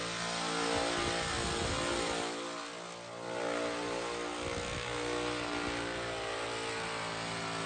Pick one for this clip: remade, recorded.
recorded